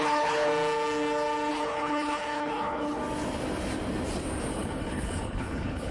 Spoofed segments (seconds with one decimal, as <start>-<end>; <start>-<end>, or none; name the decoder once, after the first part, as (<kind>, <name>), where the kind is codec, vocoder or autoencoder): 0.0-0.5 (codec, HILCodec); 1.5-3.0; 4.5-5.9